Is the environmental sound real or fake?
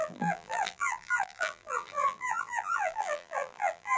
fake